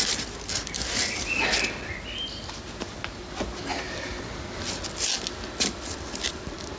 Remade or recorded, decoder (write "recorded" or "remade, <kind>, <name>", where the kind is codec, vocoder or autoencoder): recorded